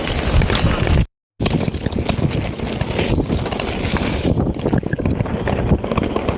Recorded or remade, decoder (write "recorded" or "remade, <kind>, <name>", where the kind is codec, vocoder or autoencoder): recorded